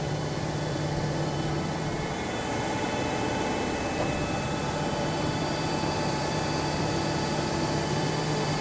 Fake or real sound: fake